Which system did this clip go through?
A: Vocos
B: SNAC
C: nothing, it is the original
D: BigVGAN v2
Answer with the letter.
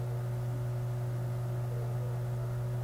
C